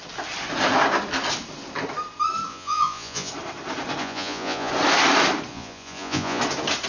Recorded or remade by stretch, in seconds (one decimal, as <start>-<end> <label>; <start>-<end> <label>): 0.0-2.5 recorded; 2.5-3.3 remade; 3.3-4.0 recorded; 4.0-4.7 remade; 4.7-5.5 recorded; 5.5-6.4 remade; 6.4-6.9 recorded